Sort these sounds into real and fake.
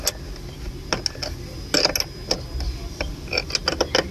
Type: real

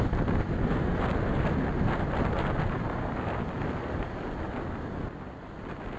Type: real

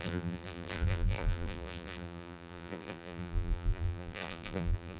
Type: fake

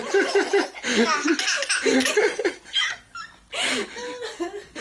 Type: real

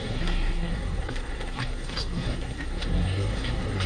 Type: fake